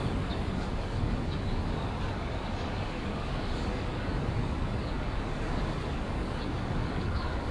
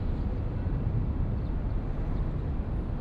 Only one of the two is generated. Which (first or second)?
first